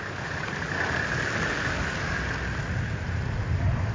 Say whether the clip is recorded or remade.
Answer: recorded